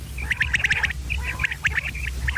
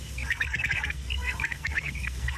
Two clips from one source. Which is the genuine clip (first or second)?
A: first